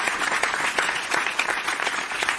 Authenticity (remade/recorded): remade